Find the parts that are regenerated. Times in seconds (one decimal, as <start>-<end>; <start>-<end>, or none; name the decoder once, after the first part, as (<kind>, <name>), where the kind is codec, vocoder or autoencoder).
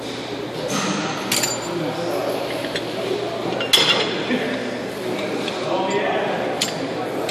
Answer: none